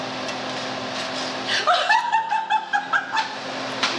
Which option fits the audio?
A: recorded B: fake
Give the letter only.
A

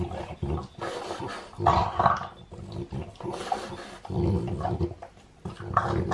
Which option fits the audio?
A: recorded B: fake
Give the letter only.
A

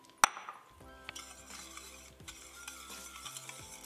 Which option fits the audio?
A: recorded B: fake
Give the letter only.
A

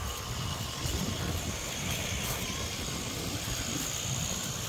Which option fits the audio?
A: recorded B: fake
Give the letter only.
A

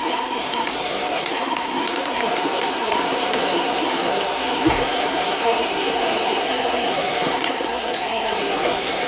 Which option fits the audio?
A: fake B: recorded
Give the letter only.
A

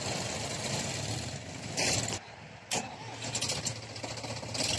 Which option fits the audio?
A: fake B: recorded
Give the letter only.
B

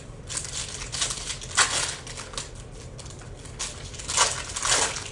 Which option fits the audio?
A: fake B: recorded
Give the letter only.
B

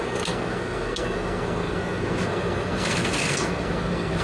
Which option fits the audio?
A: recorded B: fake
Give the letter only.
B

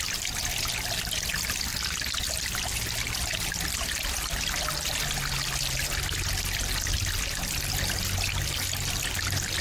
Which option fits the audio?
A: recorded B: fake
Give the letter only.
A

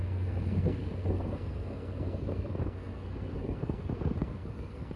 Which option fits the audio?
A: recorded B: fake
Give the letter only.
B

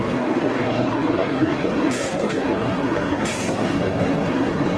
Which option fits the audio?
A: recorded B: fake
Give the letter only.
B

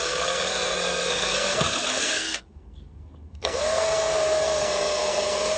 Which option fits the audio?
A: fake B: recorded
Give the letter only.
A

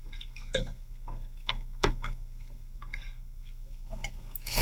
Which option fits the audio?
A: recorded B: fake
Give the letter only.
B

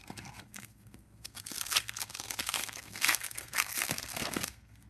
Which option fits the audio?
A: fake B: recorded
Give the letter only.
A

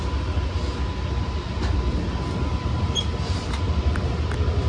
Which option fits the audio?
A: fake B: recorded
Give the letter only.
B